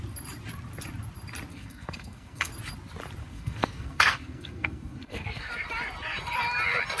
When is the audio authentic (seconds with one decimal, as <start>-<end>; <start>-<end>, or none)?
0.0-1.5; 2.5-3.2; 5.5-7.0